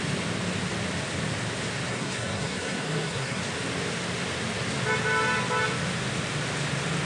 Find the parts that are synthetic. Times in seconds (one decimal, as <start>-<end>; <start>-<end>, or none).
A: 1.9-3.4